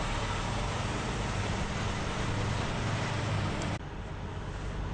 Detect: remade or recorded recorded